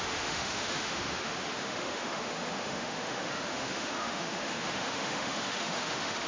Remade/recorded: remade